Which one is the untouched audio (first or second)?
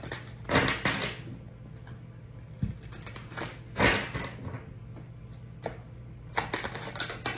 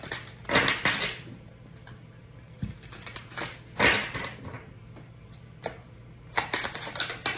first